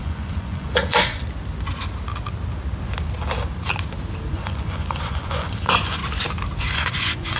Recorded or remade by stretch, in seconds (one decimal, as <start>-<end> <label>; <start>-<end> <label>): 0.0-1.2 remade; 1.2-4.3 recorded; 4.3-6.0 remade; 6.0-6.6 recorded; 6.6-7.4 remade